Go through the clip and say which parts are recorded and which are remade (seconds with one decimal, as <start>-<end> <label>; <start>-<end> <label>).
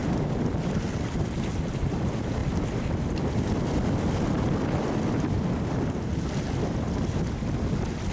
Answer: 0.0-8.1 recorded